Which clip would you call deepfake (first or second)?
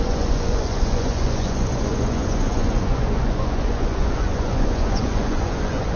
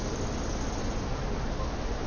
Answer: first